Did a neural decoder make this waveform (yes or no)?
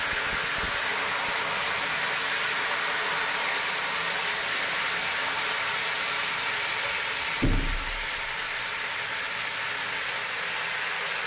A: no